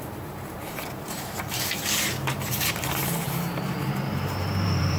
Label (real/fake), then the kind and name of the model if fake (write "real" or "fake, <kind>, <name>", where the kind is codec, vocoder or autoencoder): fake, vocoder, BigVGAN v2